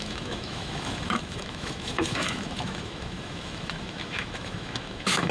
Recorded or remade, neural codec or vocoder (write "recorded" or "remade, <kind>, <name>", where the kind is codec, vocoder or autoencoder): remade, autoencoder, DAC-VAE